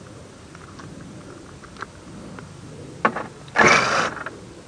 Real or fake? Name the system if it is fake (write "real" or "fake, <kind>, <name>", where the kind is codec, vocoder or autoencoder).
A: real